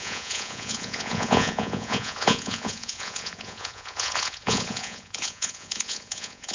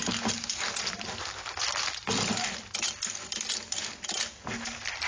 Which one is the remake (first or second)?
first